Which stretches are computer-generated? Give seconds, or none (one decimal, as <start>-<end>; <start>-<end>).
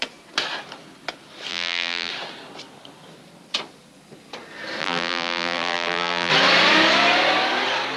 1.5-2.1; 4.8-6.3